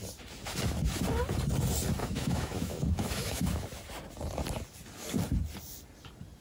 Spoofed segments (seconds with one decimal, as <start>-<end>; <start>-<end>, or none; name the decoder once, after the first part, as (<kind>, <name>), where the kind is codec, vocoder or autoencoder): 2.0-3.6 (autoencoder, DAC-VAE)